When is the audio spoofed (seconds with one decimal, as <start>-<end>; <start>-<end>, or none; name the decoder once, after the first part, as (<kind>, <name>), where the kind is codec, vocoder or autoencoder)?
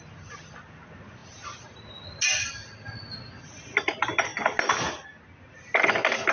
none